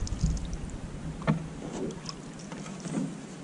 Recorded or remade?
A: recorded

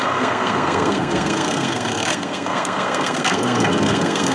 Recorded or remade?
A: remade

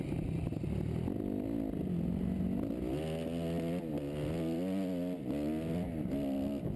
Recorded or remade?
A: recorded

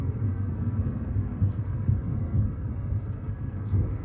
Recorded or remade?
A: remade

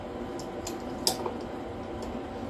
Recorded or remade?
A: recorded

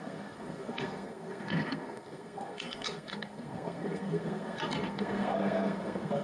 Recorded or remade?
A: remade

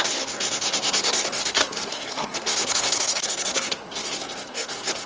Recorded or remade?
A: remade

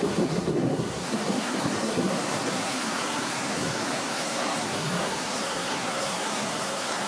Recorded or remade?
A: remade